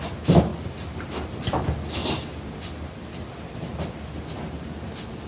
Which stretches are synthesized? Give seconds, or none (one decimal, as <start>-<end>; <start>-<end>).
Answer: 0.5-1.3; 2.0-4.1